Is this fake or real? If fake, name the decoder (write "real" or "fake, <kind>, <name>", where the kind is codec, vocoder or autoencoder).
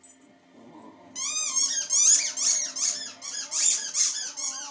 real